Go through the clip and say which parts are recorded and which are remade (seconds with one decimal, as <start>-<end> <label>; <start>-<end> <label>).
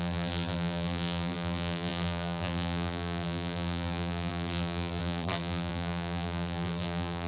0.0-7.3 remade